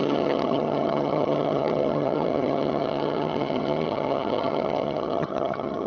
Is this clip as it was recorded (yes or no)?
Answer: no